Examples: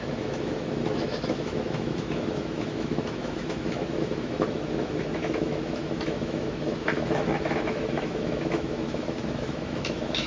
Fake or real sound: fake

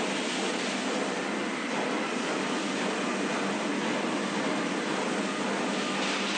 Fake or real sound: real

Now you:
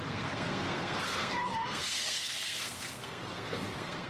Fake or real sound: fake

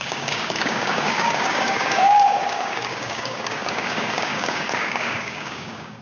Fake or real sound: fake